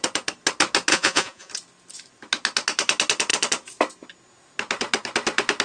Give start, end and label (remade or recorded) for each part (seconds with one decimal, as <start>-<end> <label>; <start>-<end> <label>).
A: 0.0-0.9 recorded; 0.9-1.5 remade; 1.5-5.6 recorded